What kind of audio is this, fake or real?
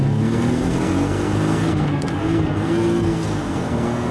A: fake